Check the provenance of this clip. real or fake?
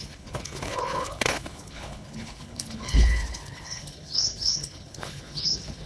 fake